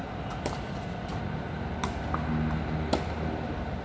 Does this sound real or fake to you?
real